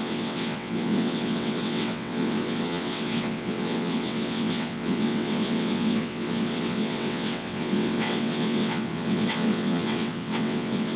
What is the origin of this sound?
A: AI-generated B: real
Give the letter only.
A